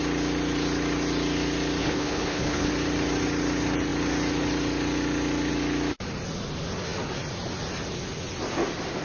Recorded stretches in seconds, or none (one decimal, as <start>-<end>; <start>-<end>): 0.0-1.8; 2.7-9.0